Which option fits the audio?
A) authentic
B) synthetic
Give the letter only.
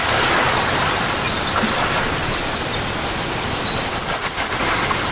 A